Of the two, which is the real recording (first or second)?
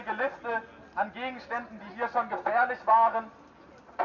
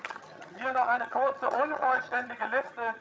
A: first